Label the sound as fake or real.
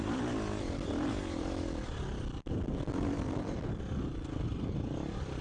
real